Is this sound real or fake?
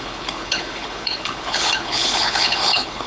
fake